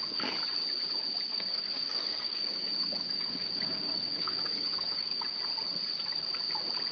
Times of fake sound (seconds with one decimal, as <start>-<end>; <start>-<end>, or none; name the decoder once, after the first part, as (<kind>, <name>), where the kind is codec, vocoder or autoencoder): 1.3-5.4 (codec, DAC)